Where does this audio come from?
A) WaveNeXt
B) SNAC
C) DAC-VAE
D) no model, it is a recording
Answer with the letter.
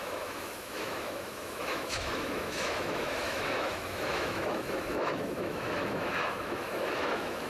C